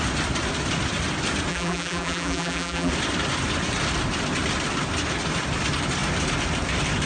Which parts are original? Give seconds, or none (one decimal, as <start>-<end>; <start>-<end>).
0.0-1.5; 2.9-7.1